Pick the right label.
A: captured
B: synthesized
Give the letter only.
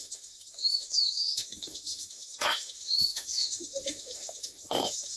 B